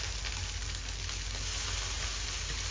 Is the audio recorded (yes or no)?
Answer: yes